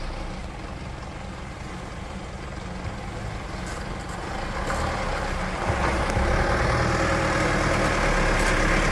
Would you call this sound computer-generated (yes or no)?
no